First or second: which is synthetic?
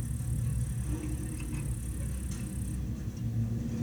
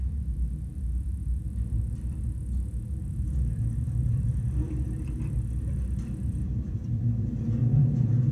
second